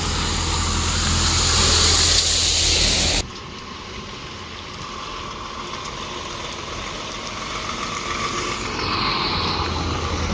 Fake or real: real